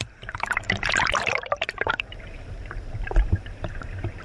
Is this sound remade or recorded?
remade